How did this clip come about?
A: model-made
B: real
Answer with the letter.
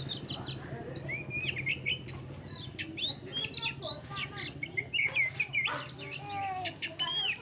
B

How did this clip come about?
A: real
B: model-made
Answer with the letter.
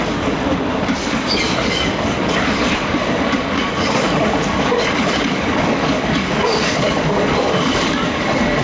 B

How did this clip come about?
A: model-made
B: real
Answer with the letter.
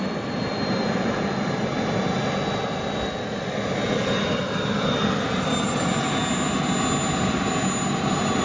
B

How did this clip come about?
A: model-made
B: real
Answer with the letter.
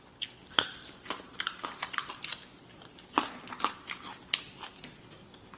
B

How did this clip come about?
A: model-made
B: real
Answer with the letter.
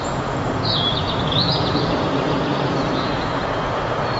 A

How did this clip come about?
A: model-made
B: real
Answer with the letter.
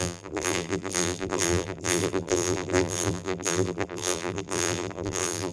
A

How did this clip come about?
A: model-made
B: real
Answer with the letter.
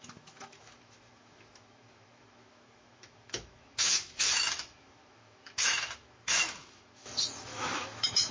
A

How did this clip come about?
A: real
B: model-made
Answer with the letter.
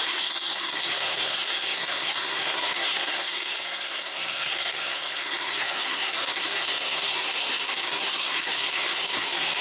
B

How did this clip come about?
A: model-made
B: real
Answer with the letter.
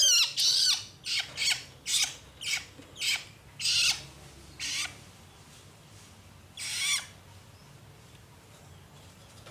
B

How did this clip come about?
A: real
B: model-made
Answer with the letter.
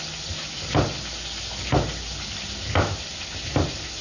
A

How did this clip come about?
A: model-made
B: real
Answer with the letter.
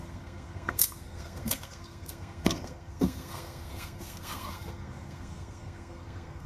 A